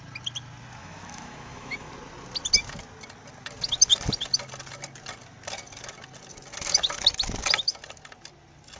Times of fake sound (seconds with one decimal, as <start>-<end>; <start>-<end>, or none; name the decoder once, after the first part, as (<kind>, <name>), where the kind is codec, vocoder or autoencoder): 0.8-1.9 (autoencoder, DAC-VAE)